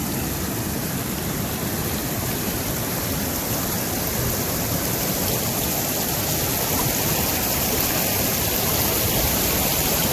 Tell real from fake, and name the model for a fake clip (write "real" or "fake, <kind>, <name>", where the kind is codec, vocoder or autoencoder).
real